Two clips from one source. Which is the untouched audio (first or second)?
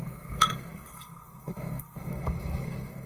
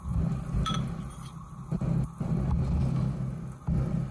second